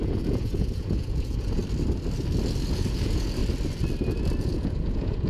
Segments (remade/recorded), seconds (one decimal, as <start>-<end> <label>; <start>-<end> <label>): 0.0-1.6 remade; 1.6-2.7 recorded; 2.7-3.4 remade; 3.4-4.4 recorded; 4.4-5.3 remade